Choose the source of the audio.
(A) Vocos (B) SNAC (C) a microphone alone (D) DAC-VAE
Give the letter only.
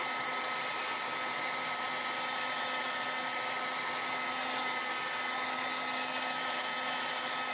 C